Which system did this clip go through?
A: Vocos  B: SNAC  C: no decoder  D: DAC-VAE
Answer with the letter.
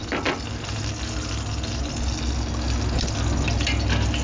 C